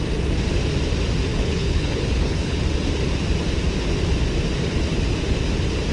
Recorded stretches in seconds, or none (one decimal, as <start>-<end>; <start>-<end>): 0.0-1.3; 2.6-5.9